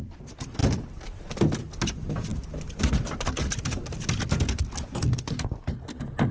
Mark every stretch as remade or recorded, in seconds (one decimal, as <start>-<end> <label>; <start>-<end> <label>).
0.0-6.3 recorded